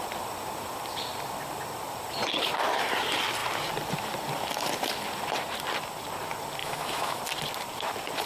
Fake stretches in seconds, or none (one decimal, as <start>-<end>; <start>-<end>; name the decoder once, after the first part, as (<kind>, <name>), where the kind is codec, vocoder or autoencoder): 6.6-7.2 (autoencoder, DAC-VAE)